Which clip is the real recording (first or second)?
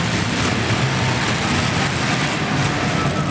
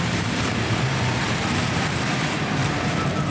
first